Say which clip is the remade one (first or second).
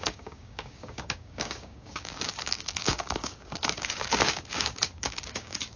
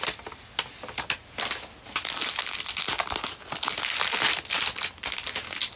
first